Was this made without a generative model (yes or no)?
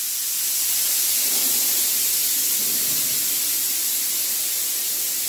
yes